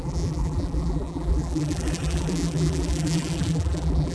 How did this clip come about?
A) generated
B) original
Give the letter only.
A